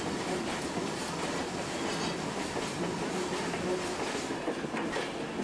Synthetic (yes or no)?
no